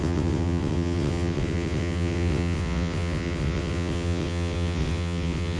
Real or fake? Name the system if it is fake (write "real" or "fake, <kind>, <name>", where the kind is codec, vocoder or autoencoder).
fake, vocoder, WaveNeXt